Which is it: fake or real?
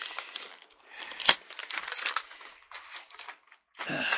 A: real